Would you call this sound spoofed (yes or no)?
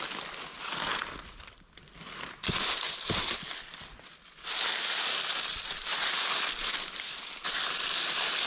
no